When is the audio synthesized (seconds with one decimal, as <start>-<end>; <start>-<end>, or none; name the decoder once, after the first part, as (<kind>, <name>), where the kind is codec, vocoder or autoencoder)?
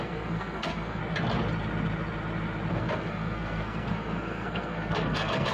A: 0.0-1.0 (codec, SNAC); 2.7-5.5